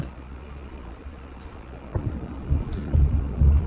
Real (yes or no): no